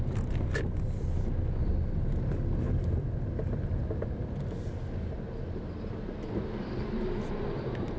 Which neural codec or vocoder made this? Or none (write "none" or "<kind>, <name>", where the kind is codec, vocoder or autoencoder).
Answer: none